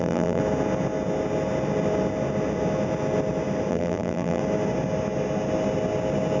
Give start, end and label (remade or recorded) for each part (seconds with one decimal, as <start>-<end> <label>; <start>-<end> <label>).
0.0-0.4 remade; 0.4-3.7 recorded; 3.7-4.4 remade; 4.4-6.4 recorded